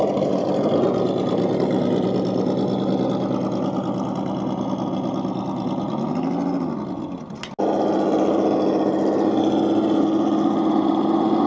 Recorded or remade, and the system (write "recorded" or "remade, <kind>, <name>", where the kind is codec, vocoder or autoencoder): recorded